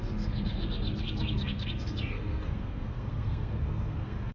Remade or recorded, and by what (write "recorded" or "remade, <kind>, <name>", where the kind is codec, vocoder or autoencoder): remade, codec, SNAC